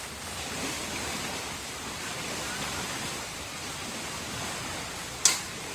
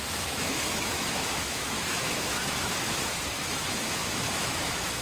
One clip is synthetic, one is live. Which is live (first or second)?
first